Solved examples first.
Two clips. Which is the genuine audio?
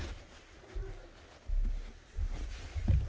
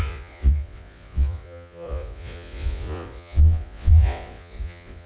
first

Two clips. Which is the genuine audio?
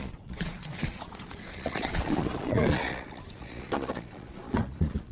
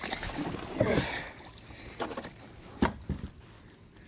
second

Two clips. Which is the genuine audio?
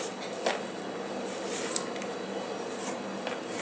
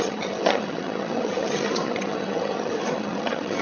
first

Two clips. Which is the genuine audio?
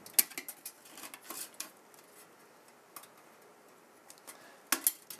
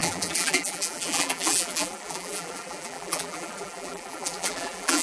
first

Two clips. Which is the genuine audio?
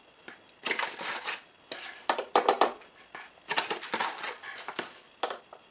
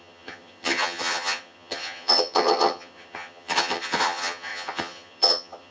first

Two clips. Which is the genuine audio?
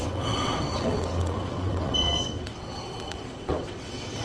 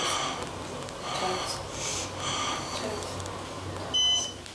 second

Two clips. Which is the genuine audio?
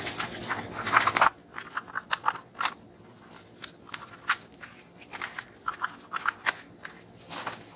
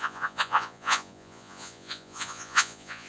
first